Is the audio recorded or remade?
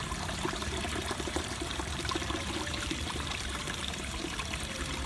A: remade